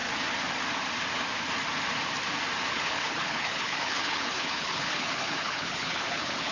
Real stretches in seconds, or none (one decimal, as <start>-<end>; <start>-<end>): 0.0-2.7